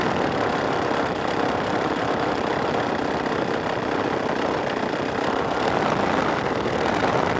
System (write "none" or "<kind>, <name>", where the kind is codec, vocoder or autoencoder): vocoder, BigVGAN v2